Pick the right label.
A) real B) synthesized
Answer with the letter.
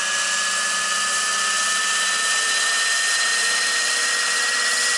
A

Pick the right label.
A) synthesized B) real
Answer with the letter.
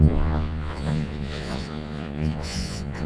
A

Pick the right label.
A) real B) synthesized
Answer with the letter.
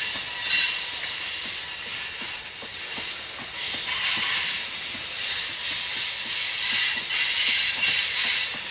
A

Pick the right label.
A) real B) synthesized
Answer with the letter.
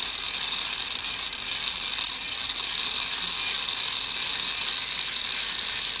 A